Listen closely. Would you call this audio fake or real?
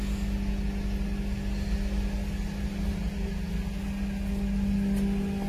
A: real